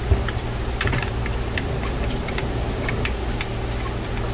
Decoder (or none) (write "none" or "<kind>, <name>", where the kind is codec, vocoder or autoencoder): none